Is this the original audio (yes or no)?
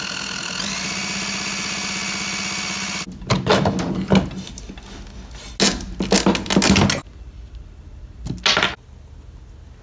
yes